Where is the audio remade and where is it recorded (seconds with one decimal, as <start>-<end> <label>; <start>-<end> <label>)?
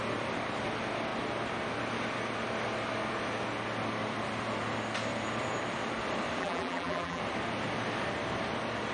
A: 0.0-6.4 recorded; 6.4-7.2 remade; 7.2-8.9 recorded